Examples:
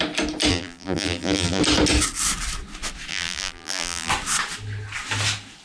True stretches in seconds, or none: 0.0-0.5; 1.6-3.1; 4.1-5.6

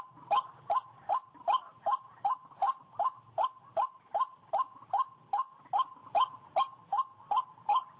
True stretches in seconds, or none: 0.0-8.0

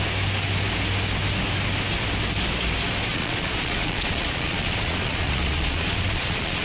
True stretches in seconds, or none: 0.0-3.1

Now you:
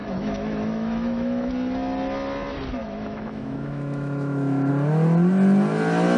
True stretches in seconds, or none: 1.5-2.8; 4.7-6.2

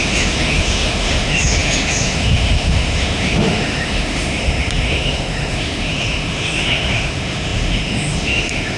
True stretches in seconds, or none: none